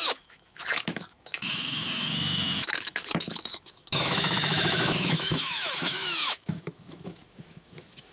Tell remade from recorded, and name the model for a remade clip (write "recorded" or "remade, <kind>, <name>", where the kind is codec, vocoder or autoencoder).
remade, autoencoder, DAC-VAE